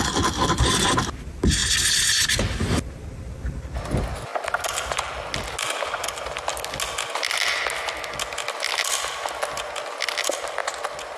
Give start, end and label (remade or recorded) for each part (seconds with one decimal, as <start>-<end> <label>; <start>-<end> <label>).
0.0-11.2 recorded